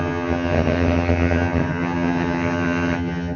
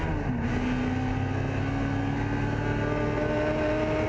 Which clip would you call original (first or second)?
second